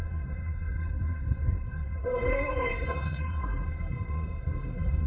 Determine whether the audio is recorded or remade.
remade